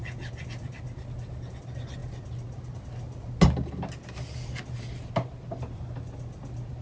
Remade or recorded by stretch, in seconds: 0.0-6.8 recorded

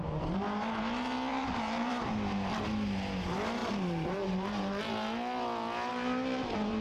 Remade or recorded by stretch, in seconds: 0.0-1.3 recorded; 1.3-1.9 remade; 1.9-3.6 recorded; 3.6-4.8 remade; 4.8-5.9 recorded; 5.9-6.8 remade

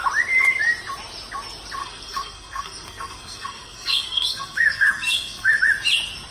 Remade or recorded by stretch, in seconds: 0.0-1.8 recorded; 1.8-5.6 remade; 5.6-6.3 recorded